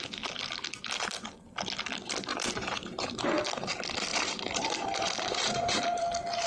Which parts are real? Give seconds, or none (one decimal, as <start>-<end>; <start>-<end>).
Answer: 0.0-2.3; 3.3-4.1; 6.0-6.5